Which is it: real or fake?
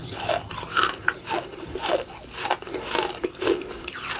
real